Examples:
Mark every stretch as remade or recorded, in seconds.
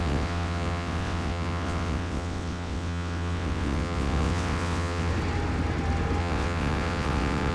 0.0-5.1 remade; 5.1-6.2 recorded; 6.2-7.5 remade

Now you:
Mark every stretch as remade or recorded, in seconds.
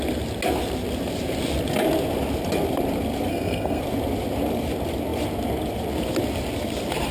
0.0-3.3 recorded; 3.3-3.8 remade; 3.8-7.1 recorded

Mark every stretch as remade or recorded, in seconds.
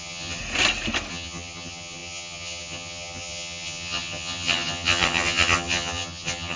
0.0-0.4 remade; 0.4-1.1 recorded; 1.1-6.6 remade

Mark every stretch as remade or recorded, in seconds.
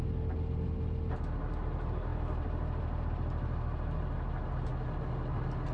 0.0-5.7 recorded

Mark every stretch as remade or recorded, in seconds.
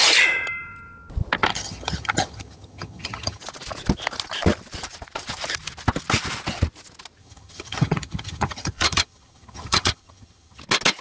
0.0-1.5 recorded; 1.5-3.4 remade; 3.4-7.2 recorded; 7.2-10.6 remade; 10.6-11.0 recorded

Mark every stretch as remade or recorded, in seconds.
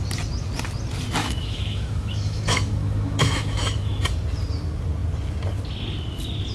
0.0-1.2 recorded; 1.2-4.0 remade; 4.0-6.5 recorded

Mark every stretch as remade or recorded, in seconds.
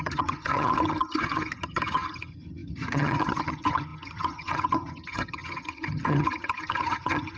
0.0-7.4 remade